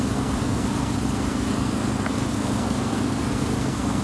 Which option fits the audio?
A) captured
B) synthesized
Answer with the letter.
B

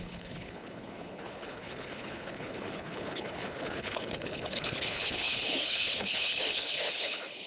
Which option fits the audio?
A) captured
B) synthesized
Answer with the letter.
B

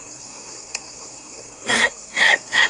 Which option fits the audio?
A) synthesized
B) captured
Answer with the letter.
A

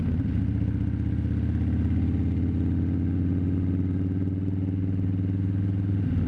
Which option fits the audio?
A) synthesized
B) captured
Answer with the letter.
B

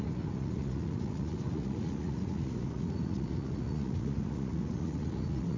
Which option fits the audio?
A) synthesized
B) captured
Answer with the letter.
A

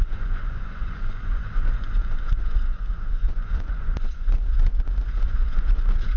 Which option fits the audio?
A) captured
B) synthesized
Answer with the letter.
B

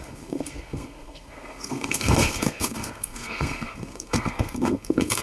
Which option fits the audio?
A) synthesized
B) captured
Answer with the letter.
A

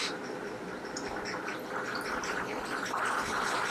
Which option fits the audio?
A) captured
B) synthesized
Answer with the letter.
A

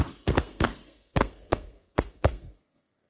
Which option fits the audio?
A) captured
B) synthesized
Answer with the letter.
B